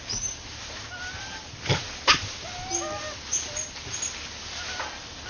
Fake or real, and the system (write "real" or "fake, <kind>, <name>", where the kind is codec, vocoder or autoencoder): real